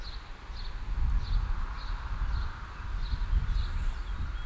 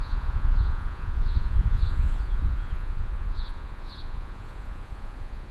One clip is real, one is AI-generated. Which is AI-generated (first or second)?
second